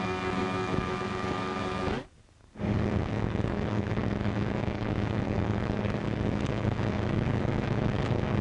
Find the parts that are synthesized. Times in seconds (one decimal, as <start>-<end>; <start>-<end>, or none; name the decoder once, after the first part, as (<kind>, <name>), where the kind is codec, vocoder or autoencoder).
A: 0.0-8.4 (codec, DAC)